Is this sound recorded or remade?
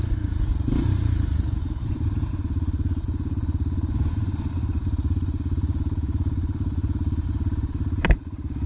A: remade